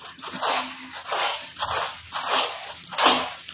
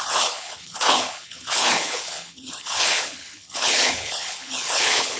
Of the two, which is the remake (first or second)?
second